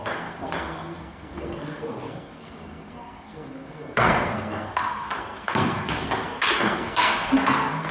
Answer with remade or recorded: remade